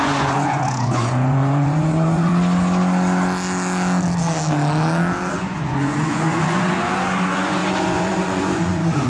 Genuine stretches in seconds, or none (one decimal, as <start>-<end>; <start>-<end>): 2.3-5.3